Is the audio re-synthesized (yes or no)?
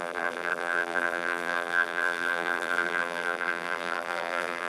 yes